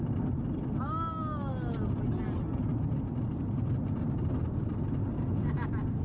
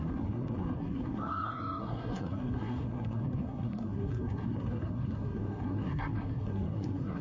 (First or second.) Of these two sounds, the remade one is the second